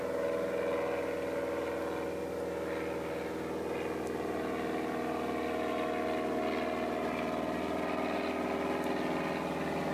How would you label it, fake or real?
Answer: real